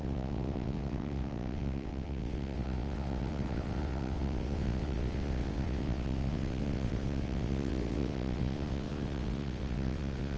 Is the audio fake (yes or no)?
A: yes